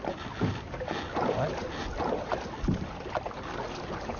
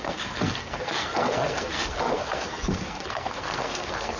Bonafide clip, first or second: first